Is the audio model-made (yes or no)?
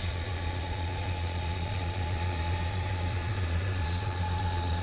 yes